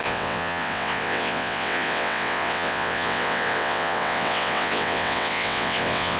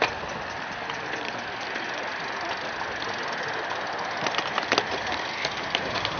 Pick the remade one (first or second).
first